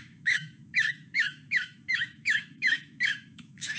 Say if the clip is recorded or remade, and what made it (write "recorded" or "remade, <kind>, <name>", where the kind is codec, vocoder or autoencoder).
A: remade, autoencoder, DAC-VAE